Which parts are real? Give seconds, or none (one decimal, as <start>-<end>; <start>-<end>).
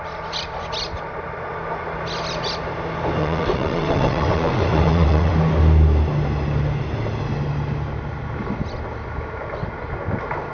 0.0-3.2; 5.3-10.5